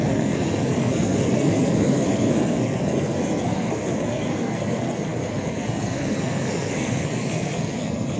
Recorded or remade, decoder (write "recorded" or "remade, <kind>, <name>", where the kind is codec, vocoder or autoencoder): remade, codec, SNAC